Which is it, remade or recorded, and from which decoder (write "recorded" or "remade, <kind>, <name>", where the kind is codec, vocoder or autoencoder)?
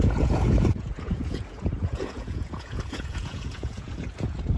remade, vocoder, Vocos